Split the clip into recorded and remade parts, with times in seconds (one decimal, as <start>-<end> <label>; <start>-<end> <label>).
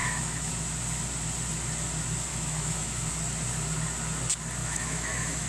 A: 0.0-0.5 remade; 0.5-2.3 recorded; 2.3-3.1 remade; 3.1-4.6 recorded; 4.6-5.5 remade